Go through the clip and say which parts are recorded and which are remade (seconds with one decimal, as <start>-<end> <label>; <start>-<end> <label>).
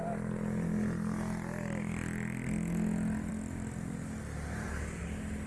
0.0-5.5 recorded